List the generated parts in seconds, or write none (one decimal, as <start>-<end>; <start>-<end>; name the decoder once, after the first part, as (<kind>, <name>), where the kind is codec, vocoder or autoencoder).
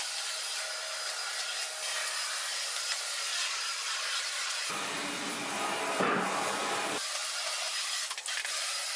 3.3-4.7 (vocoder, Vocos)